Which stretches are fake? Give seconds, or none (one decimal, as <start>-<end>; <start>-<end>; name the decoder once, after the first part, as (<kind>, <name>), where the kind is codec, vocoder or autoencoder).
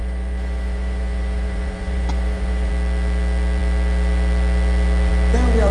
0.0-2.7 (vocoder, Vocos)